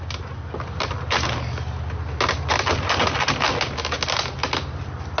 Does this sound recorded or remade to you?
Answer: recorded